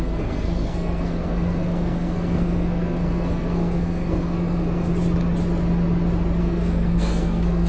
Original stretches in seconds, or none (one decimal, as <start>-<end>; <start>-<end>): 4.9-6.4